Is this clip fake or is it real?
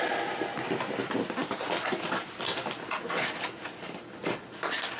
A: real